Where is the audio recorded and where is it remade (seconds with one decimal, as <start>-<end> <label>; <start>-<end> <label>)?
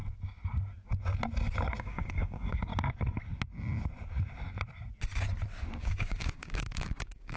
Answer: 0.0-1.8 recorded; 1.8-2.7 remade; 2.7-5.8 recorded; 5.8-7.4 remade